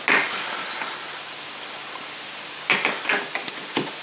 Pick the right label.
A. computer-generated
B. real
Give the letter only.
B